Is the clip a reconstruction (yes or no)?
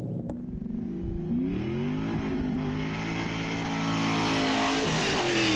no